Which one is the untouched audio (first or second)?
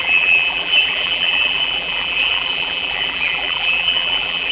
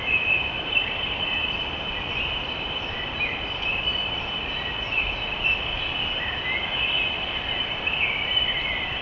second